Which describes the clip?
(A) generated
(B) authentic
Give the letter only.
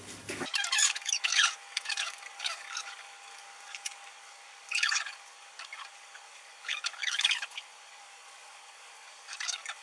A